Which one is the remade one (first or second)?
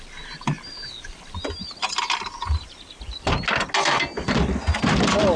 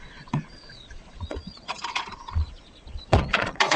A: second